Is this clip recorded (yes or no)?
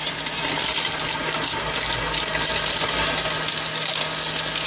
yes